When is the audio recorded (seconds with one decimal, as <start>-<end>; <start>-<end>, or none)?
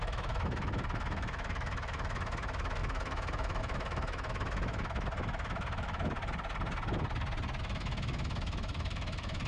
6.2-7.6